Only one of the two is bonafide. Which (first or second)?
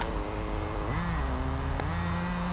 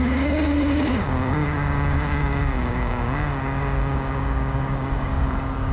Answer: first